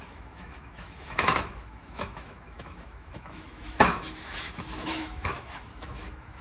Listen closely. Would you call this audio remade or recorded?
remade